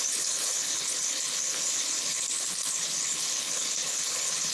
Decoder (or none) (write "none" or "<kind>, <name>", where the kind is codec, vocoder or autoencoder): codec, HILCodec